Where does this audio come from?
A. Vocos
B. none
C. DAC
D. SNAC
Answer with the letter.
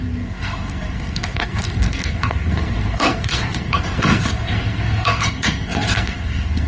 D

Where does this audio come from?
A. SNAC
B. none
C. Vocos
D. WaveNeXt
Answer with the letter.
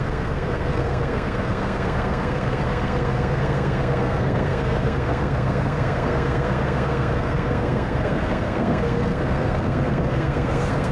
A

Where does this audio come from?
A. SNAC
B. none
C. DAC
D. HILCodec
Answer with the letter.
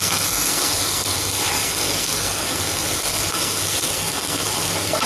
A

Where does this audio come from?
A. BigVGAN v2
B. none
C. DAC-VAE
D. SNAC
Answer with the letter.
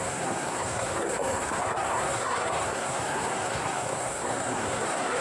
D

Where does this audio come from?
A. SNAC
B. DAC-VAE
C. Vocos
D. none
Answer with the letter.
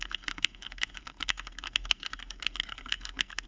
A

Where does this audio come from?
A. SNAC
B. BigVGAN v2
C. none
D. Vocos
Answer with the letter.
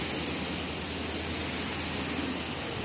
C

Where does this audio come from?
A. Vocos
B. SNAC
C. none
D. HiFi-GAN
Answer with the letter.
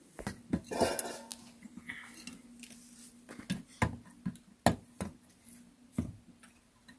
C